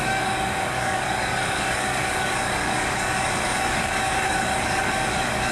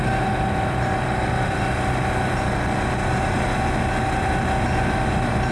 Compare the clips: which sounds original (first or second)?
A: second